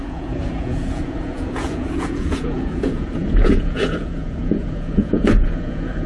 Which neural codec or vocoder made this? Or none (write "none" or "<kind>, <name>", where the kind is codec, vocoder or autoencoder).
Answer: vocoder, Vocos